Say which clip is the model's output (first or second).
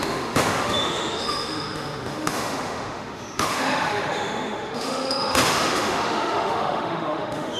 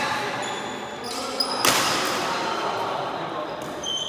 first